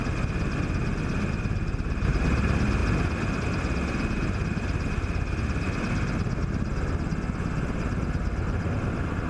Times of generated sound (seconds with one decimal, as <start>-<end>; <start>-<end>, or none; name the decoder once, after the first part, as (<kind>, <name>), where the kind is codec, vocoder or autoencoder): 1.1-2.2 (vocoder, BigVGAN v2)